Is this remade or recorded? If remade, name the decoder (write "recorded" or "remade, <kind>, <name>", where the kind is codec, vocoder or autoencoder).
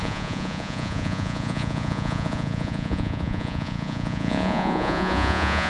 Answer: remade, vocoder, Vocos